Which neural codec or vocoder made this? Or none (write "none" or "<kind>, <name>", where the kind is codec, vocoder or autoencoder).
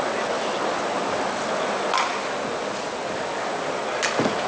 none